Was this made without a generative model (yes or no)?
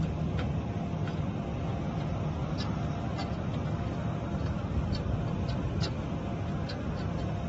yes